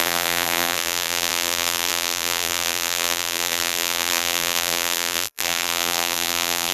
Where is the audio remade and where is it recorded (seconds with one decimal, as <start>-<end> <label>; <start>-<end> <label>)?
0.0-6.7 remade